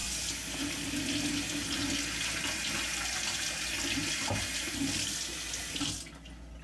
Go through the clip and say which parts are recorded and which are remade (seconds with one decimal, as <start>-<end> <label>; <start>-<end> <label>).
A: 0.0-6.6 recorded